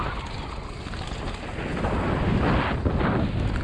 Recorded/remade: recorded